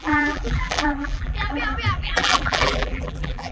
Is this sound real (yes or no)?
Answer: no